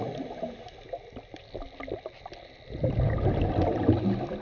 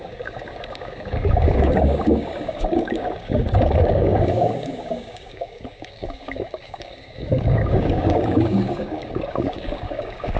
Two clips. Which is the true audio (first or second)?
first